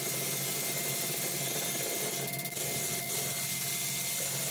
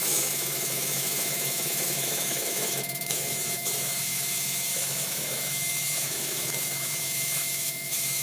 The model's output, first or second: second